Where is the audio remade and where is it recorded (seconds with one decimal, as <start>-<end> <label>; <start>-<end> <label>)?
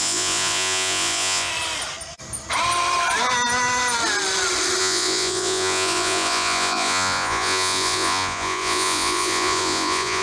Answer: 0.0-1.5 remade; 1.5-4.8 recorded; 4.8-10.2 remade